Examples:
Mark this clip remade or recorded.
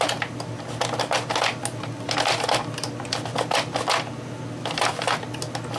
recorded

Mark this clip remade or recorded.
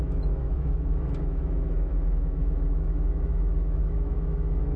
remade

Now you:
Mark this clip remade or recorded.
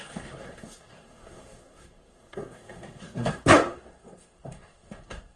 remade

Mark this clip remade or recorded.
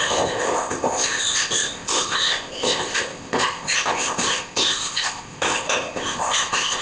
remade